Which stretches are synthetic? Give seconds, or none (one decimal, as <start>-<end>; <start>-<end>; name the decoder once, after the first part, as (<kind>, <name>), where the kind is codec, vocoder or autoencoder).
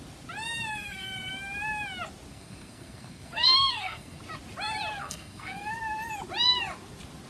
0.7-1.3 (codec, SNAC); 2.3-4.2; 5.0-5.7